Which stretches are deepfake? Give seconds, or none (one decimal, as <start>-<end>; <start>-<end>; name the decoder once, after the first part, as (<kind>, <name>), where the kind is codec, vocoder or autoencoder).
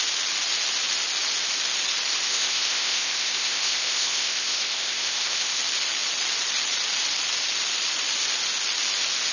2.3-5.6 (codec, ZipCodec)